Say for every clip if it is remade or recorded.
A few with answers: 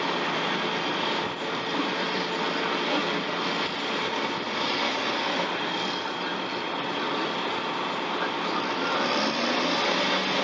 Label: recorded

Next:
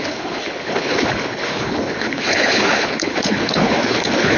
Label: remade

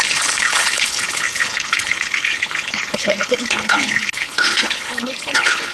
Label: remade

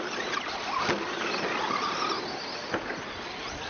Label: recorded